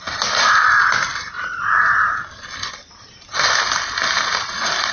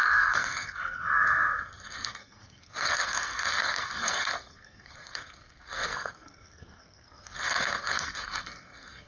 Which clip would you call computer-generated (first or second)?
second